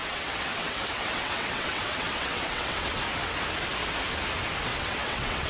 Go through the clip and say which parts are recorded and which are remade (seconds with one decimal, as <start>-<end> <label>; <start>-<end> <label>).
0.0-3.0 remade; 3.0-4.7 recorded; 4.7-5.5 remade